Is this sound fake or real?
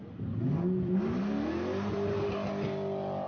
real